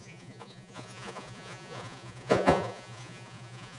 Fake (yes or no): yes